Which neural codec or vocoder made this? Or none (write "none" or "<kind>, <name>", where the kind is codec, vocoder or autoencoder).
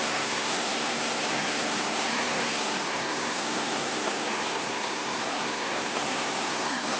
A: codec, SNAC